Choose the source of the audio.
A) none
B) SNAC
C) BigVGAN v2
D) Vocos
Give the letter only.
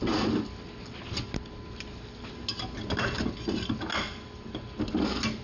A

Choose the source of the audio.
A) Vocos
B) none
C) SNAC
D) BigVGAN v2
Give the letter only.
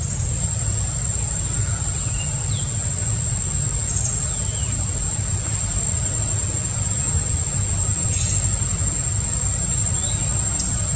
B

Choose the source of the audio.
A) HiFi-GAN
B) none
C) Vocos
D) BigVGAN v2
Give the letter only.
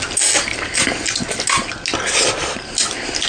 B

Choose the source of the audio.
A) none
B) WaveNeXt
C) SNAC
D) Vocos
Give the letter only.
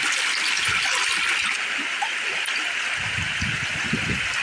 A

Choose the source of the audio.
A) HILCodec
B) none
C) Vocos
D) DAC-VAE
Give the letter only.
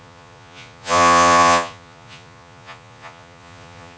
C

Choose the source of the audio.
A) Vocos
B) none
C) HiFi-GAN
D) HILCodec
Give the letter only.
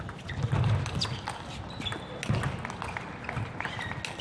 B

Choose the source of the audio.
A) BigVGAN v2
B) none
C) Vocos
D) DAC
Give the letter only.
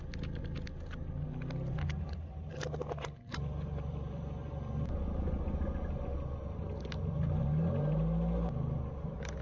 B